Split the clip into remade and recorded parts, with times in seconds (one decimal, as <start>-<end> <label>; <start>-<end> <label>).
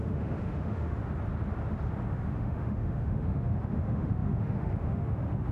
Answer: 0.0-1.0 remade; 1.0-2.1 recorded; 2.1-5.5 remade